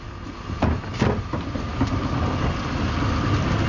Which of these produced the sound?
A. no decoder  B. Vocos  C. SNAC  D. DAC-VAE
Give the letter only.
A